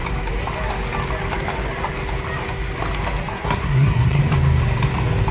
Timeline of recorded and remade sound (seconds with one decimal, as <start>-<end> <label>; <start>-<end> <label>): 0.0-3.3 recorded; 3.3-4.2 remade; 4.2-5.3 recorded